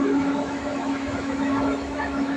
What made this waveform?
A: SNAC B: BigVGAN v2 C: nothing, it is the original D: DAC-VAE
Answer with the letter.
D